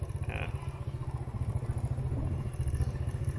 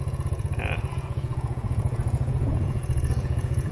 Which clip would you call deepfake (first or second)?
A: second